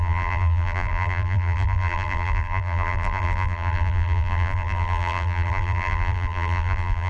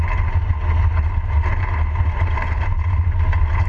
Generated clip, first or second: first